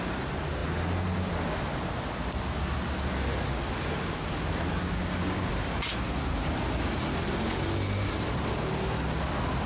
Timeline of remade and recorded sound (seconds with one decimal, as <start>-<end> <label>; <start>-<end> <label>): 0.0-4.8 recorded; 4.8-5.5 remade; 5.5-9.7 recorded